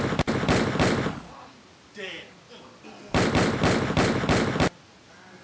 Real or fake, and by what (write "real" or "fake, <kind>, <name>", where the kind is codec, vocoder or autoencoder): real